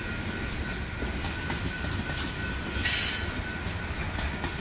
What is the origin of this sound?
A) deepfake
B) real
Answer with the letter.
B